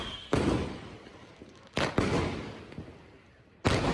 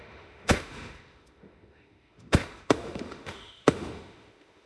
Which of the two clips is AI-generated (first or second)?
second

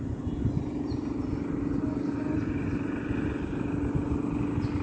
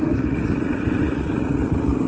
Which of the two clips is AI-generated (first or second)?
second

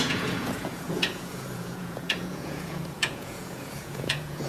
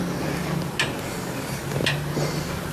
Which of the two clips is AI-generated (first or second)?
first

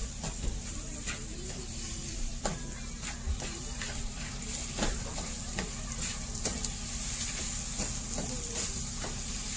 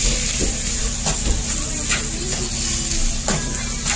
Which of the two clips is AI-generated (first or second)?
first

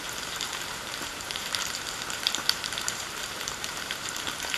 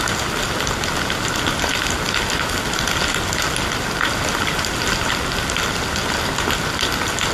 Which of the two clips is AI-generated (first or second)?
first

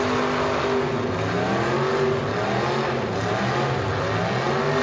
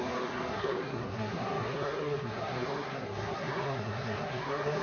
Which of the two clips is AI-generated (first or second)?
second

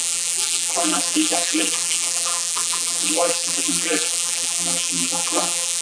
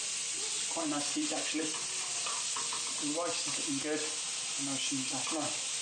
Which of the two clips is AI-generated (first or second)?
first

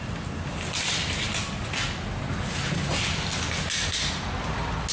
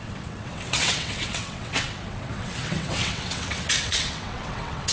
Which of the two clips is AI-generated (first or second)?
second